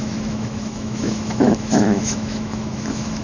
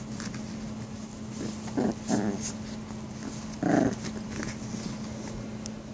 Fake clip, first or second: first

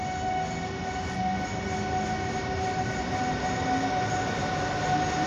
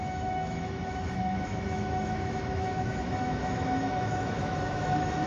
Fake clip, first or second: second